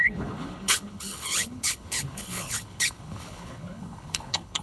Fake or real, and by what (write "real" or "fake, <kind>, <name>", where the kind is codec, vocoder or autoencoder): fake, codec, HILCodec